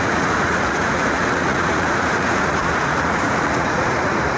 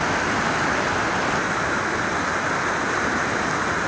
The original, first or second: second